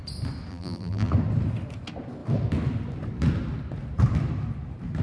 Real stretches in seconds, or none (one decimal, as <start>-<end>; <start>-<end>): 0.0-0.5; 1.1-5.0